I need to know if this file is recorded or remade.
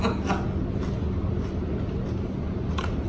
recorded